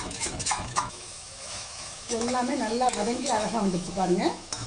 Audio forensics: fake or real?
fake